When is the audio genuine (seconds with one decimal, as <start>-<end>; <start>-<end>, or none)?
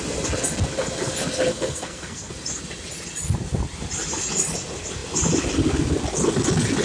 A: 0.0-1.5; 2.3-6.8